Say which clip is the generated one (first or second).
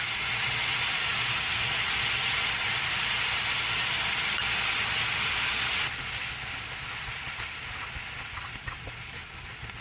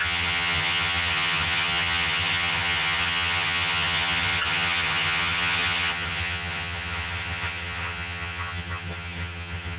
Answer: second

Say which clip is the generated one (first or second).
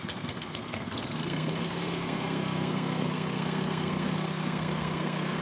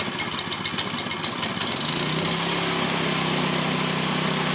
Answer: first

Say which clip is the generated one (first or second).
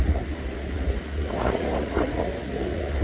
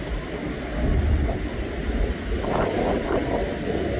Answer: first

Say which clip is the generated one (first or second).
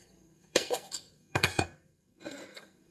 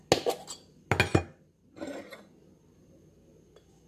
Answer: first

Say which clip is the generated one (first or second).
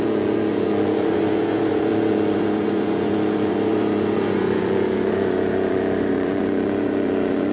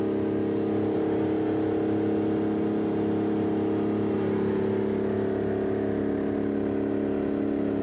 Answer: first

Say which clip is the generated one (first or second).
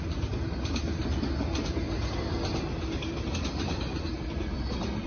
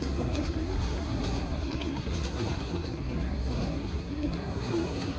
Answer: second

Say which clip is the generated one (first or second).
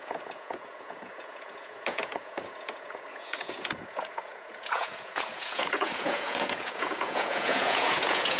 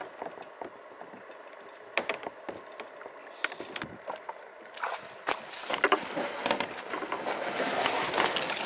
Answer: first